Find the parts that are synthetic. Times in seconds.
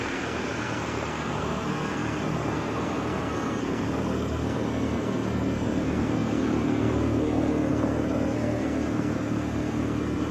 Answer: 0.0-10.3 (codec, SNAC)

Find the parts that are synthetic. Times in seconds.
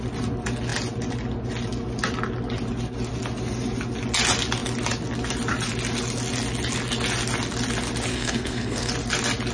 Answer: 8.1-8.9 (codec, SNAC)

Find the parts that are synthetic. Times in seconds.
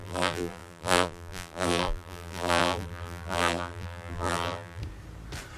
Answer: 0.0-4.8 (vocoder, BigVGAN v2)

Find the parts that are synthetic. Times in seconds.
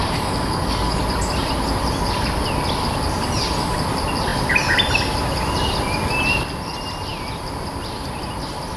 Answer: 0.0-1.0 (codec, DAC)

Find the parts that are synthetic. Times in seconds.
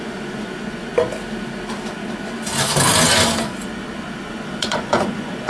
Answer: 0.0-0.9 (vocoder, Vocos); 4.2-5.5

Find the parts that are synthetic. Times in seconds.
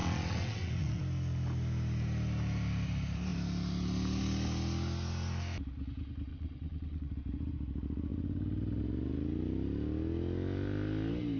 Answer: 0.0-1.0 (vocoder, WaveNeXt); 6.3-7.1